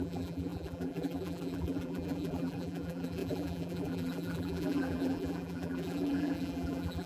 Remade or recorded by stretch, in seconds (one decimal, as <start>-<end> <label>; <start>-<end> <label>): 0.0-7.1 remade